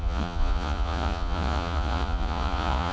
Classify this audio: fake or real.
fake